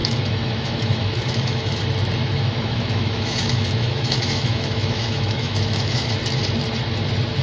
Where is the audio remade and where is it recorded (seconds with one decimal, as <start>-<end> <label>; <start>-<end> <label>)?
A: 0.0-1.8 remade; 1.8-2.2 recorded; 2.2-6.1 remade; 6.1-7.4 recorded